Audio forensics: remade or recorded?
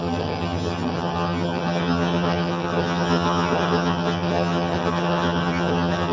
remade